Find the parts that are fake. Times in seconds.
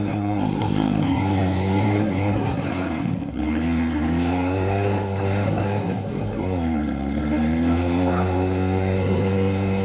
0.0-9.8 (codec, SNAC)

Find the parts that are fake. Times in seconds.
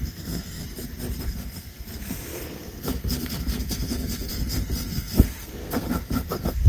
0.0-0.6 (codec, SNAC); 1.2-6.7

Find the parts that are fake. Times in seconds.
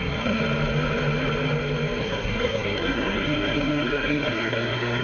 0.0-0.4 (codec, SNAC); 2.0-5.0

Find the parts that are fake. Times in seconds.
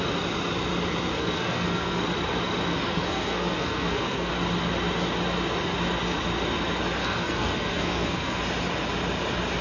1.2-2.0 (codec, SNAC); 2.7-4.3; 7.0-8.4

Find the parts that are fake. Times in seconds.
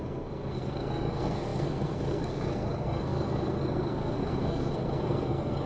0.0-5.7 (codec, SNAC)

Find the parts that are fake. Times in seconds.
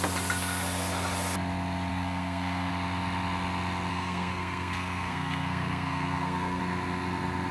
1.9-2.7 (codec, SNAC); 3.9-6.6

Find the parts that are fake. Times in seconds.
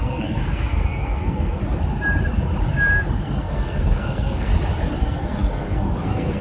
0.0-1.6 (codec, SNAC); 3.2-4.5; 5.0-6.4